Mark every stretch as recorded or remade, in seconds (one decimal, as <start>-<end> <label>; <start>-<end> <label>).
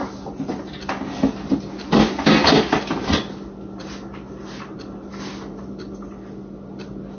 0.0-7.2 recorded